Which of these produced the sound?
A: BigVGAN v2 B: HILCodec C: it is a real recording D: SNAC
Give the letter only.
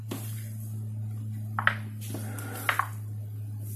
C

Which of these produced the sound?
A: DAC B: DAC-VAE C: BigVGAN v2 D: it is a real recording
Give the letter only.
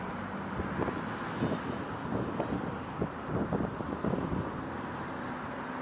D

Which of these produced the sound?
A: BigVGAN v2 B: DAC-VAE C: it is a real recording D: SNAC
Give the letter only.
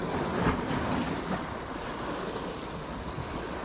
C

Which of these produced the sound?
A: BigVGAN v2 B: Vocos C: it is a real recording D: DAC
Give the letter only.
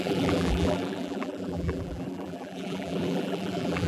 A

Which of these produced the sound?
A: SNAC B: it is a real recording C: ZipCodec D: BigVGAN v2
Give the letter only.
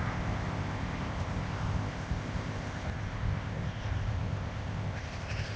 C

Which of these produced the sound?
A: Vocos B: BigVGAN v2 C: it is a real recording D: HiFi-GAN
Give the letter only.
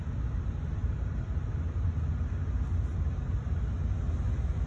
C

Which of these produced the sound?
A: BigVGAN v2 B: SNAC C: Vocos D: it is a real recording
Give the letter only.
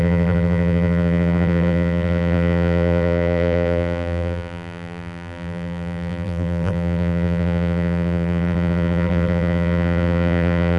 A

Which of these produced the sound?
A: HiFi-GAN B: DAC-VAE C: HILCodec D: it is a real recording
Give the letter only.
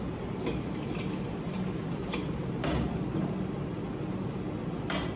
D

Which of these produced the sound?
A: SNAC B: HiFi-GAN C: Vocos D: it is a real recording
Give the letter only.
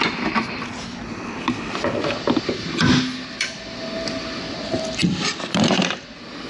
D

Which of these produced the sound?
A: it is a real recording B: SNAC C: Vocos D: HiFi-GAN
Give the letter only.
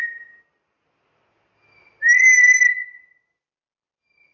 A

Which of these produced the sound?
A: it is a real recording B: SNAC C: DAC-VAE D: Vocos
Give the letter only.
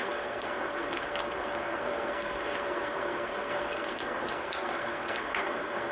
B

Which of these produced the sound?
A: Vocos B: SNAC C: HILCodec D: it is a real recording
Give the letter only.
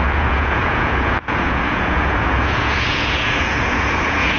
A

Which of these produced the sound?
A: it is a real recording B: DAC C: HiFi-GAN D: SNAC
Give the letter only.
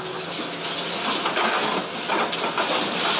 A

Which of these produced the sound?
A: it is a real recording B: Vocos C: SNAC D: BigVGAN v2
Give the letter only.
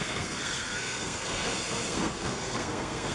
C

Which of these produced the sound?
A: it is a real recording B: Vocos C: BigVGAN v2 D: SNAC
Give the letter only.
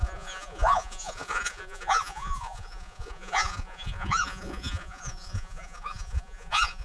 B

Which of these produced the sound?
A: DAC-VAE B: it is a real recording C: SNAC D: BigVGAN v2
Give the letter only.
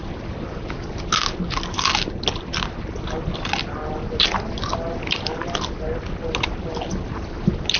B